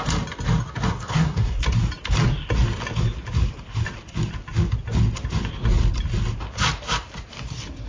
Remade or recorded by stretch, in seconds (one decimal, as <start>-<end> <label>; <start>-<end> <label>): 0.0-0.9 recorded; 0.9-1.6 remade; 1.6-7.9 recorded